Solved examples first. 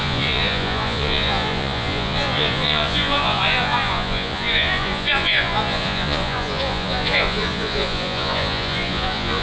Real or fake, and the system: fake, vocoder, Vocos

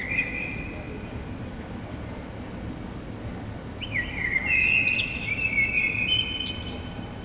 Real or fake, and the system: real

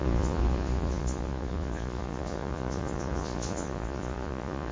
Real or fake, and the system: fake, vocoder, Vocos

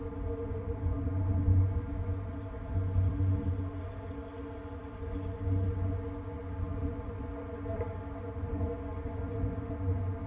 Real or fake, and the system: real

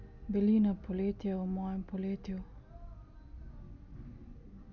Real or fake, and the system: real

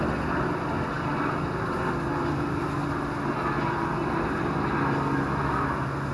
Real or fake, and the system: real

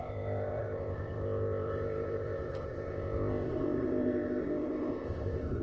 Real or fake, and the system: fake, codec, ZipCodec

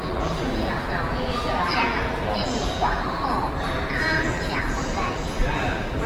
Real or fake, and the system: fake, vocoder, BigVGAN v2